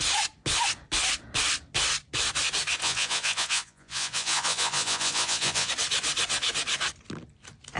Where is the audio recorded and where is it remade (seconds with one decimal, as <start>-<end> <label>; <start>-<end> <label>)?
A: 0.0-2.8 recorded; 2.8-5.7 remade; 5.7-7.8 recorded